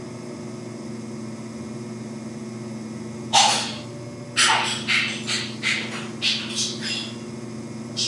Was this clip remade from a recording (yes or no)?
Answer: no